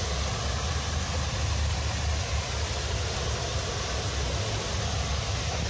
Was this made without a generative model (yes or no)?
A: yes